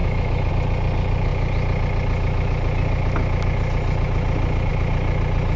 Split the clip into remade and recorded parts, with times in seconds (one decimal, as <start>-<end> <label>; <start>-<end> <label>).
0.0-0.5 remade; 0.5-5.6 recorded